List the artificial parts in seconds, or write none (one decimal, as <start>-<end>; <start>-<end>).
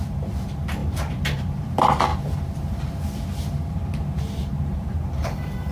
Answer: 0.0-5.7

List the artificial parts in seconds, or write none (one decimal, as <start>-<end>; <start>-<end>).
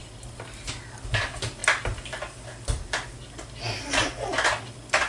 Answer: none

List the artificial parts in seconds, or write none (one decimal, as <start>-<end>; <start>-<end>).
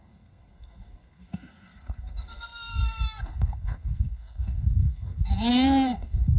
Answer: 0.0-6.4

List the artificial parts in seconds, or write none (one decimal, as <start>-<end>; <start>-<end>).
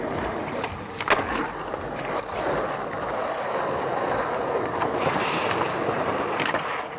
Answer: 0.0-0.7; 1.4-2.1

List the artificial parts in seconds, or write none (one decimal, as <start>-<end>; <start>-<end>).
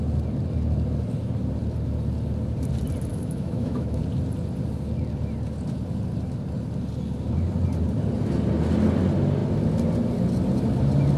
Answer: 3.1-4.0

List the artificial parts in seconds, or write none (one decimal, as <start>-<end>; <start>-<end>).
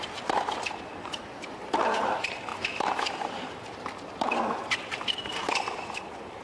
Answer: 0.0-6.4